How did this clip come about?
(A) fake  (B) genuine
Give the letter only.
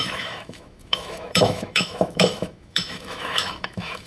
A